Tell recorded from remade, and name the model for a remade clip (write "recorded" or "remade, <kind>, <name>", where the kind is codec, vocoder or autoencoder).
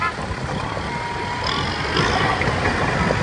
recorded